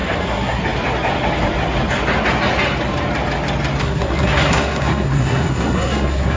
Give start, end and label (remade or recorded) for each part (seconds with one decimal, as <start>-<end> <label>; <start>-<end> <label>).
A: 0.0-0.6 remade; 0.6-3.8 recorded; 3.8-6.4 remade